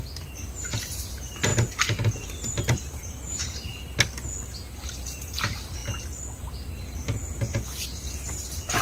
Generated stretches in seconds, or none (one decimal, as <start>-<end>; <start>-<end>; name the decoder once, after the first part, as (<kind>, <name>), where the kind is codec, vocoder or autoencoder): 0.0-1.5 (vocoder, BigVGAN v2); 2.1-3.7; 4.8-5.8; 6.4-8.8